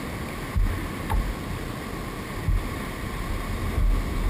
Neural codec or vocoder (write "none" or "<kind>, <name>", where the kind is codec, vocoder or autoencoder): none